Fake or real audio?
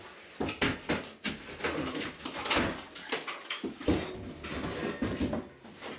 real